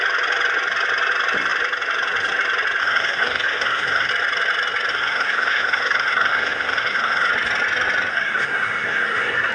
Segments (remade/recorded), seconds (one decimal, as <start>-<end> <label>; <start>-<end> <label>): 0.0-2.8 recorded; 2.8-4.1 remade; 4.1-4.9 recorded; 4.9-7.3 remade; 7.3-8.1 recorded; 8.1-9.5 remade